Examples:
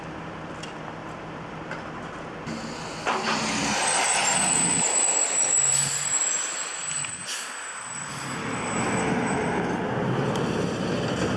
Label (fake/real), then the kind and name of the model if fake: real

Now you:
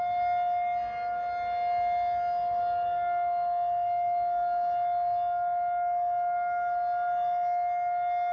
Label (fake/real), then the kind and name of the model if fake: real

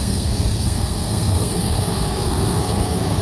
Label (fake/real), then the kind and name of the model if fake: fake, codec, SNAC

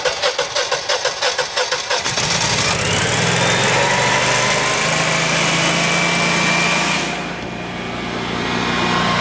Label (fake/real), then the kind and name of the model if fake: real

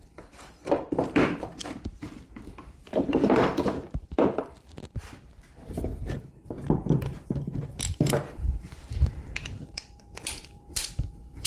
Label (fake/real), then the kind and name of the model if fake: fake, vocoder, BigVGAN v2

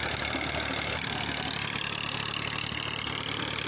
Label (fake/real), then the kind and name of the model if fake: real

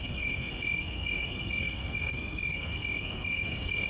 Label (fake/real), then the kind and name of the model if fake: fake, codec, SNAC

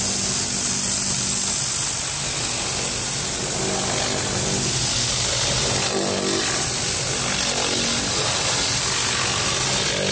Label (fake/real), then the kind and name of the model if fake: real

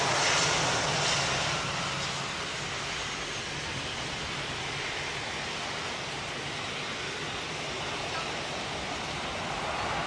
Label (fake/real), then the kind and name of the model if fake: real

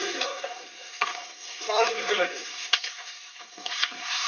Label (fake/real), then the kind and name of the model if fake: fake, codec, SNAC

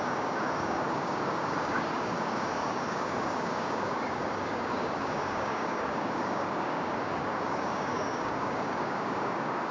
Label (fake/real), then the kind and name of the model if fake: fake, codec, DAC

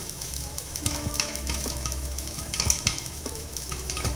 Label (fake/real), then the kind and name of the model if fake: fake, autoencoder, DAC-VAE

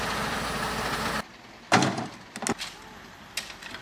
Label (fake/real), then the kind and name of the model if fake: real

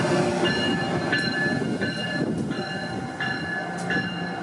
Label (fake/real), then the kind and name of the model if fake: real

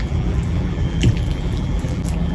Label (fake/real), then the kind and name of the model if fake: fake, vocoder, BigVGAN v2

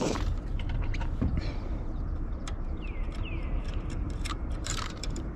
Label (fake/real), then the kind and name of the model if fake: fake, vocoder, BigVGAN v2